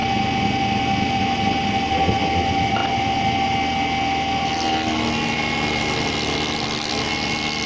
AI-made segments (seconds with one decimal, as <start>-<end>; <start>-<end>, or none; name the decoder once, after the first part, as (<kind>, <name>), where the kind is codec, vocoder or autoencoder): none